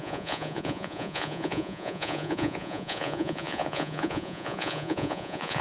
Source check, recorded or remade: remade